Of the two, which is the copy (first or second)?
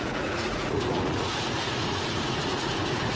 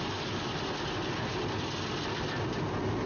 first